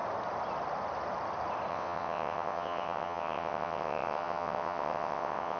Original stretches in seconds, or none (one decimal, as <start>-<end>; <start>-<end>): 0.0-1.7

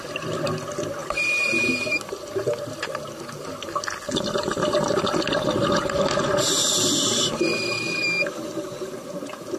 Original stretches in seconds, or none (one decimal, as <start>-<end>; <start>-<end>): 0.0-9.6

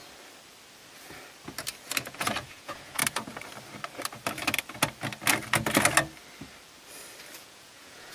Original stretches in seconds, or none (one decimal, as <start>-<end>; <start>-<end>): 0.0-2.1; 3.0-7.4

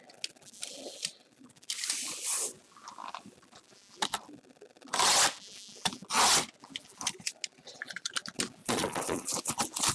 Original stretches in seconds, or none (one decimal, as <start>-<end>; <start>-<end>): 0.0-8.6; 9.5-9.9